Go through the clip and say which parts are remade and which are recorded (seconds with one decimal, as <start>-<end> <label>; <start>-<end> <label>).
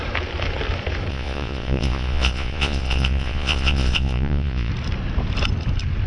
0.0-1.1 recorded; 1.1-4.7 remade; 4.7-6.1 recorded